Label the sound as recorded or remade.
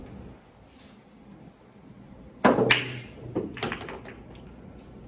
recorded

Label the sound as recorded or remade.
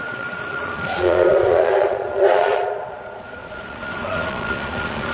remade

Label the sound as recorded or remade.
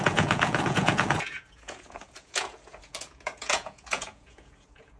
remade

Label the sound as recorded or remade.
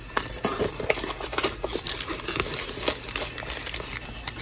recorded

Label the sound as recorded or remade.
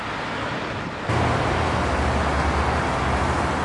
recorded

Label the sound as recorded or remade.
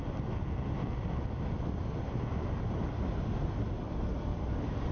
recorded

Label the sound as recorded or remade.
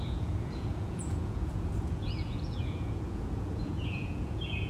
remade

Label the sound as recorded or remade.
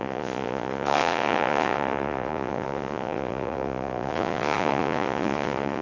remade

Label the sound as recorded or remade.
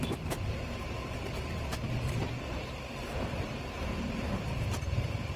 remade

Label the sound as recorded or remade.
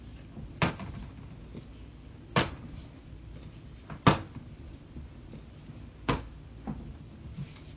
recorded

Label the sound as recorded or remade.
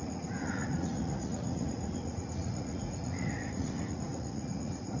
remade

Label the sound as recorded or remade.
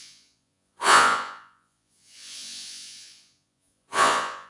remade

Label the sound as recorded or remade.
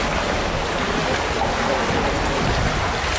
recorded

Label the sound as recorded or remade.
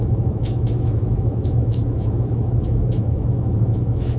remade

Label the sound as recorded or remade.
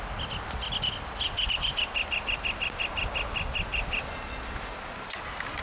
recorded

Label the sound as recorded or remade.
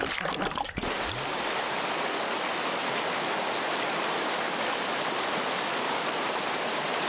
recorded